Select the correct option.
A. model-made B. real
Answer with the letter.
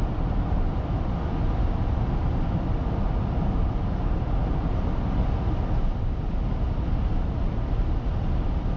B